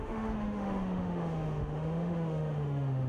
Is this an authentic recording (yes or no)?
no